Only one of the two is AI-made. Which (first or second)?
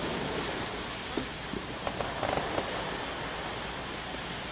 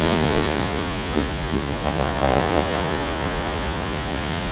second